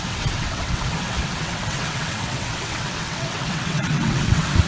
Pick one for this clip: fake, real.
fake